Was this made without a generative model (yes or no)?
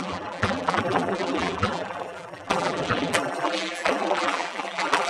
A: no